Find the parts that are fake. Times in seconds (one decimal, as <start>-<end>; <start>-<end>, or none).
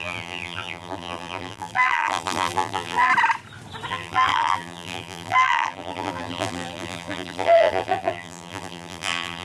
0.0-3.1; 3.9-9.4